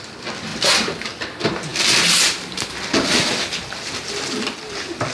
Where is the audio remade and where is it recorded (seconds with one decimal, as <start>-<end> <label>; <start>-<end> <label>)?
0.0-0.5 recorded; 0.5-1.1 remade; 1.1-1.7 recorded; 1.7-5.1 remade